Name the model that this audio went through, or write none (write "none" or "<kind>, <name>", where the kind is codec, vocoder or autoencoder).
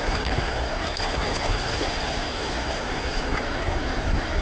codec, SNAC